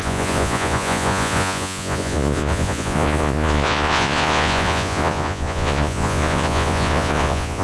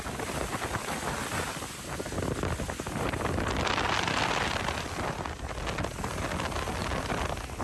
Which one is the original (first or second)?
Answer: second